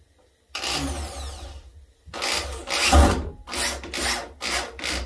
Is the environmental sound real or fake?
real